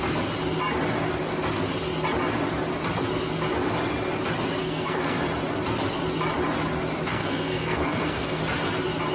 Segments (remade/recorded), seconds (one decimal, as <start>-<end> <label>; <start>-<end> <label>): 0.0-4.6 recorded; 4.6-5.2 remade; 5.2-7.1 recorded; 7.1-8.4 remade; 8.4-9.1 recorded